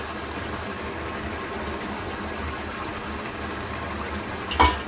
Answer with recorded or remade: recorded